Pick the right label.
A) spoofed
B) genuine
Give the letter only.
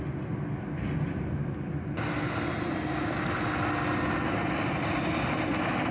B